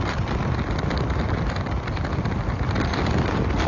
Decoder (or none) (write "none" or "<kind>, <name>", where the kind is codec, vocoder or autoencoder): none